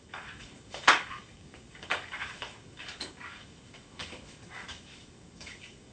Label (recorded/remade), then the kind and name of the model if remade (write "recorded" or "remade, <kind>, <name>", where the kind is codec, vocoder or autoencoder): remade, codec, DAC